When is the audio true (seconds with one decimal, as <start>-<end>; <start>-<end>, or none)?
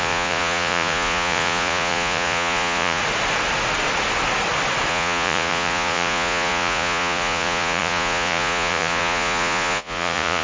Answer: 3.0-4.9